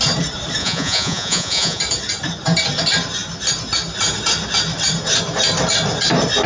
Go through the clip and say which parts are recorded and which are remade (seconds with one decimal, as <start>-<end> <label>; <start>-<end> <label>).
0.0-0.6 recorded; 0.6-1.8 remade; 1.8-6.5 recorded